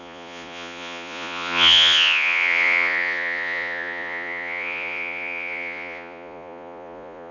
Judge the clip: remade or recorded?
remade